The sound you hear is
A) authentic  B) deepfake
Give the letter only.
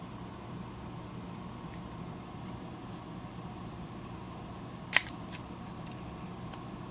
A